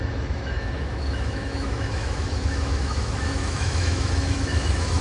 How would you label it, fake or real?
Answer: fake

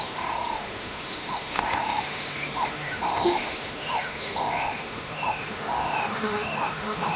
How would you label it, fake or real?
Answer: fake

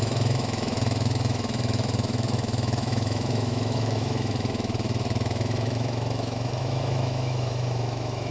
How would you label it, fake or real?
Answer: fake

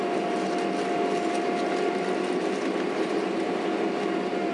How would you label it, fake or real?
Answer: real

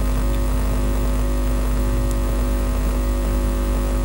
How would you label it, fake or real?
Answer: real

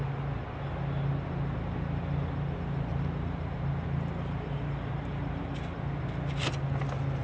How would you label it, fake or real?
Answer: real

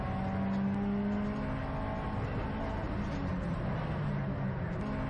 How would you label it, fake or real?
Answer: real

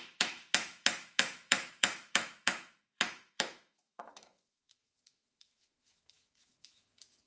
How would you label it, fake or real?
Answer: fake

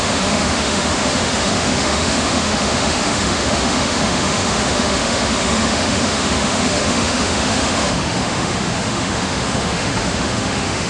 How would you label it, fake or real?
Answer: fake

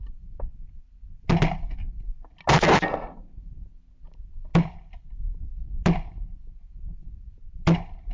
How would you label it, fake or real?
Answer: real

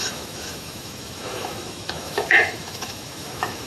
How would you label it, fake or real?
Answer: fake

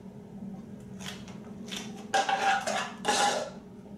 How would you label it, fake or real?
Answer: real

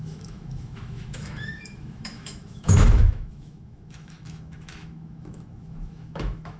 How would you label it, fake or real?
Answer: fake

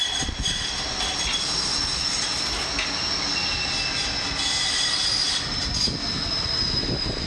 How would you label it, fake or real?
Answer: real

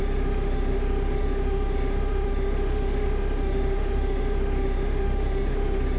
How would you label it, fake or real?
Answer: fake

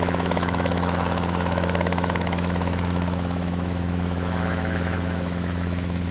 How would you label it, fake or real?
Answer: fake